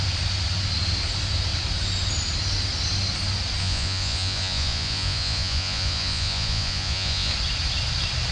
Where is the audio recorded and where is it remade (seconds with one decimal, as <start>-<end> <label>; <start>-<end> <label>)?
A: 0.0-3.6 recorded; 3.6-7.3 remade; 7.3-8.3 recorded